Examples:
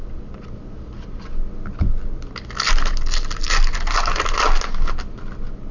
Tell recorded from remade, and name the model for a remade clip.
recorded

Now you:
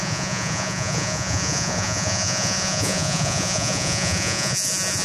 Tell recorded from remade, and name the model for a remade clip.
remade, vocoder, Vocos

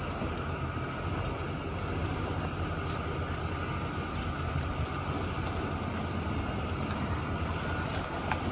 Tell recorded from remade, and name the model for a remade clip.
recorded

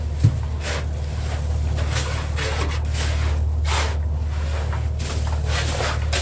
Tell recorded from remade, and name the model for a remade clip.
recorded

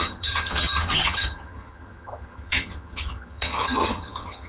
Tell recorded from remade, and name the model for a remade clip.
remade, vocoder, HiFi-GAN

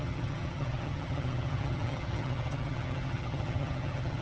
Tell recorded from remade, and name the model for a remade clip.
remade, vocoder, HiFi-GAN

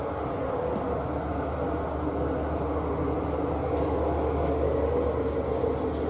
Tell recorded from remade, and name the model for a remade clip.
recorded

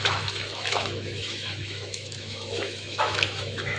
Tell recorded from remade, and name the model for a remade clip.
remade, autoencoder, DAC-VAE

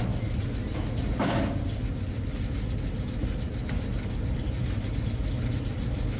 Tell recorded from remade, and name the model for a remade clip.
recorded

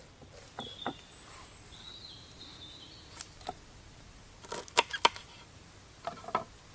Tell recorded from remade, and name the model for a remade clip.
recorded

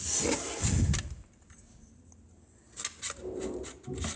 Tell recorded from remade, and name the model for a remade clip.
recorded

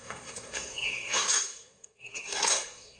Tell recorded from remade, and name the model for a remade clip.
remade, codec, SNAC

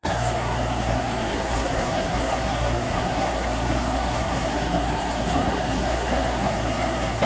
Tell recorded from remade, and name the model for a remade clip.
remade, codec, SNAC